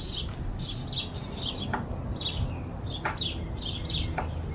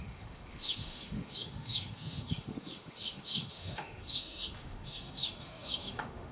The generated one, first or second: second